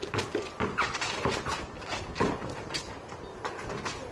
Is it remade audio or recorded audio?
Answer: recorded